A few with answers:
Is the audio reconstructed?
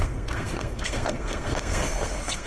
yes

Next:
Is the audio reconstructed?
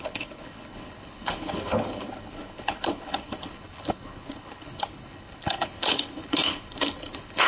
yes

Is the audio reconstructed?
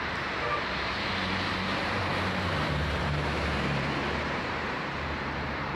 yes